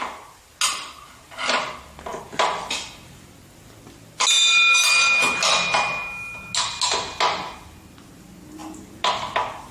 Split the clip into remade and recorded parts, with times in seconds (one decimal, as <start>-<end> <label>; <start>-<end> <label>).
0.0-9.7 recorded